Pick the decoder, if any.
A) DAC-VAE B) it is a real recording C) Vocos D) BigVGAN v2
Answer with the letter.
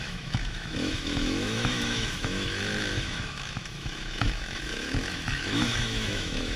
A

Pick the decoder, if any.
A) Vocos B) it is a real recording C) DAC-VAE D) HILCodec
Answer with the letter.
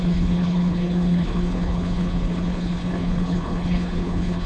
D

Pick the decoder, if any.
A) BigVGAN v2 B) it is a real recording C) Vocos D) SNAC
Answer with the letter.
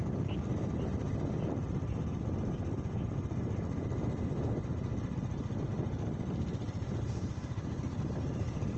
B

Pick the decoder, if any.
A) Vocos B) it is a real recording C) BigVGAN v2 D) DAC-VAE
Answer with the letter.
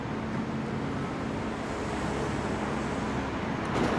B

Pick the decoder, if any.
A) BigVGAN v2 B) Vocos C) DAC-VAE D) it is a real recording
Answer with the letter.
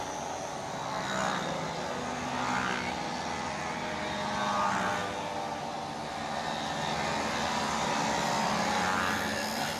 D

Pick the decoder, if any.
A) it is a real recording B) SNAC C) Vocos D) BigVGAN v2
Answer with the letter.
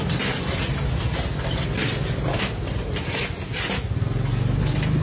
A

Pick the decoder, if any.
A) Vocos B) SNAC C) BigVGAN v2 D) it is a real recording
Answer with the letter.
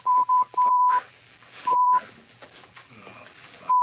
C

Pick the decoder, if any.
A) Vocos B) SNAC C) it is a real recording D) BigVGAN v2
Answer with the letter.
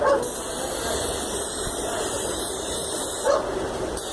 C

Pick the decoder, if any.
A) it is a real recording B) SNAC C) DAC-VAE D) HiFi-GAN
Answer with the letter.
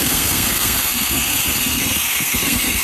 B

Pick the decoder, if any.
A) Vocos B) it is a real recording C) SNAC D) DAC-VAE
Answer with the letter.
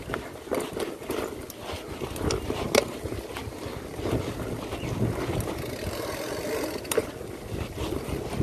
B